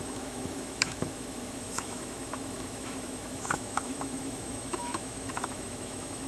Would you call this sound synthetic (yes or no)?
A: yes